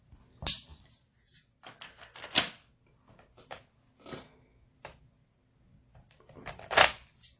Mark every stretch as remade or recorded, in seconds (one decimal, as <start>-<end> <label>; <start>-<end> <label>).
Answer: 0.0-7.4 recorded